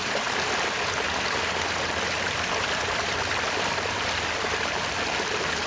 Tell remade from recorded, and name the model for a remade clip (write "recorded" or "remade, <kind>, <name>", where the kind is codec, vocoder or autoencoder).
recorded